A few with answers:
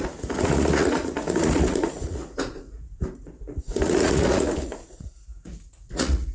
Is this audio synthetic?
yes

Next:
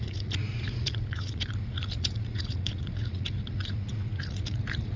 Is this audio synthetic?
yes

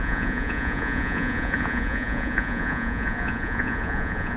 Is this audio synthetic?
yes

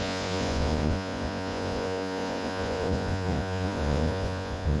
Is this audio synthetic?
yes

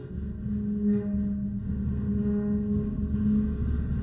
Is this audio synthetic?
no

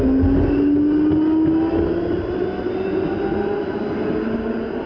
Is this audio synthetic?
no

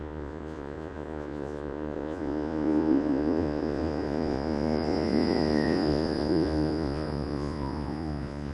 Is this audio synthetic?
yes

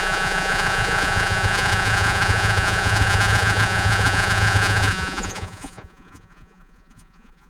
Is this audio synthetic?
yes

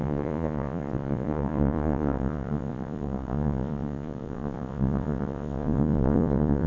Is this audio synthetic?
yes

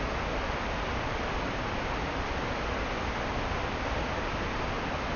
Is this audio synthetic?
no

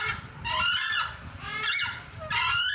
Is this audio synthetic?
no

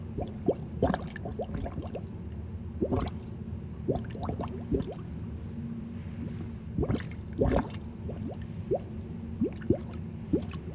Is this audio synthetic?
no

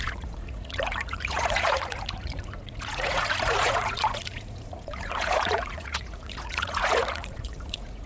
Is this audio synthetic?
yes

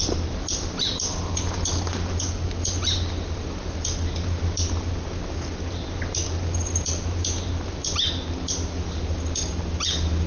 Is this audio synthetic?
no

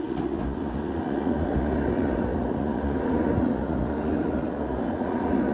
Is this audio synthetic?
yes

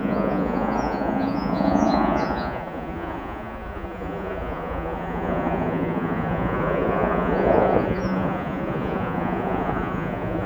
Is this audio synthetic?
yes